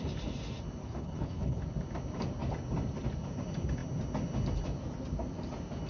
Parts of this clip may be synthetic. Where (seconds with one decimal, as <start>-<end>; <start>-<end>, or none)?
0.8-1.6